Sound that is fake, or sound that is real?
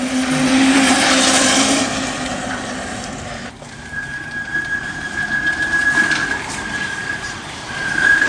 fake